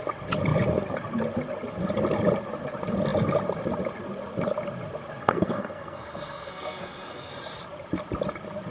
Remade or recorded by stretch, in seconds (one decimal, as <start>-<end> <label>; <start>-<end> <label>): 0.0-5.2 recorded; 5.2-7.3 remade; 7.3-8.7 recorded